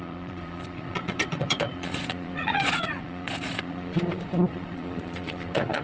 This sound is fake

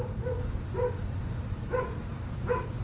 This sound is real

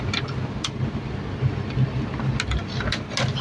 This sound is real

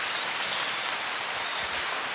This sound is real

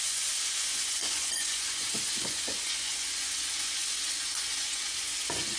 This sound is fake